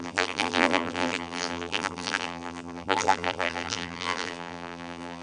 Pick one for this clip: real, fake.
fake